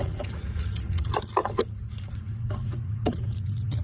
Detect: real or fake fake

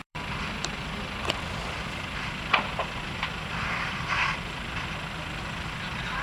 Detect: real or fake fake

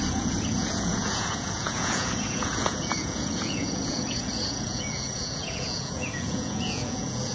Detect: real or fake fake